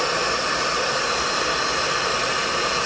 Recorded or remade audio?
recorded